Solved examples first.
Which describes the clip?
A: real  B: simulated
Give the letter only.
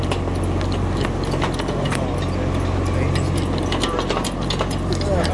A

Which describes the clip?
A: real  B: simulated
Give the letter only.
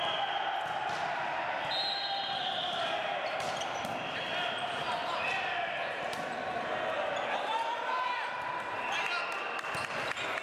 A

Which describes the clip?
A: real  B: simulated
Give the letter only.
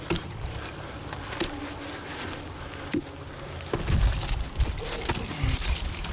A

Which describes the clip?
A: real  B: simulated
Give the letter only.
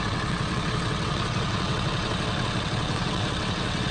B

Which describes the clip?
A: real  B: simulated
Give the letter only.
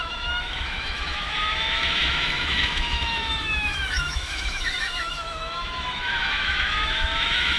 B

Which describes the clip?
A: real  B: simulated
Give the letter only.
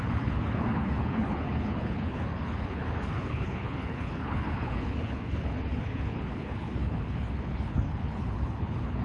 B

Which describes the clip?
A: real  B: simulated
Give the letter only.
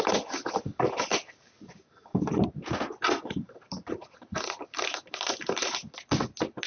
A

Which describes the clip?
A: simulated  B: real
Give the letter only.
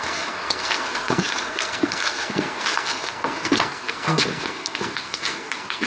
A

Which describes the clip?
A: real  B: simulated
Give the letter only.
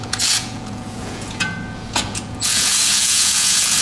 B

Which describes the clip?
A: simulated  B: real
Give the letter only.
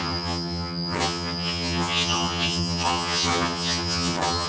A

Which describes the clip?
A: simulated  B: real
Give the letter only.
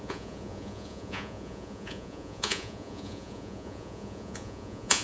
A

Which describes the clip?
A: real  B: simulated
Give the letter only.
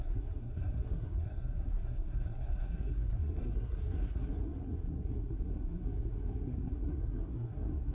B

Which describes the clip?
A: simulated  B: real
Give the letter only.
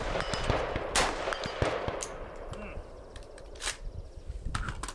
B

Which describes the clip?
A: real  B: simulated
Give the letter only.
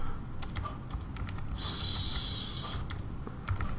A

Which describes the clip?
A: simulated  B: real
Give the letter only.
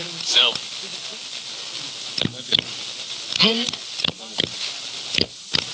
B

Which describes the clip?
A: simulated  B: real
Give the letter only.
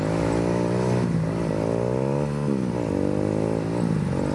B